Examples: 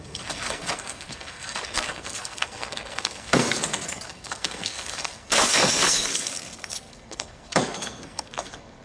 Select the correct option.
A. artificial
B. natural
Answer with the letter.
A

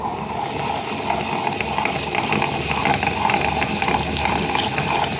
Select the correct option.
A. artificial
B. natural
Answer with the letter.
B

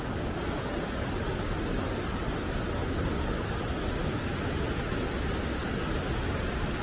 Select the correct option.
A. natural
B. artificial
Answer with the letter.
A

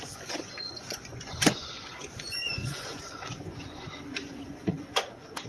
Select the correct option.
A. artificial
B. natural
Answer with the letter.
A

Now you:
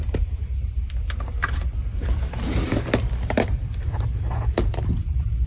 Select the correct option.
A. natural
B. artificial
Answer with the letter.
B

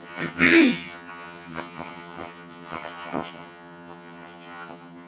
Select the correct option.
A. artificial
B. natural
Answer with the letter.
A